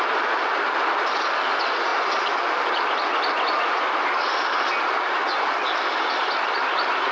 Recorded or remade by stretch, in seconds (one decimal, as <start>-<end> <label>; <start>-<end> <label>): 0.0-7.1 recorded